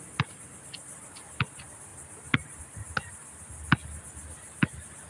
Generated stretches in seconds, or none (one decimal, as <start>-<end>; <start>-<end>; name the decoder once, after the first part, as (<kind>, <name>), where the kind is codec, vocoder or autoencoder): none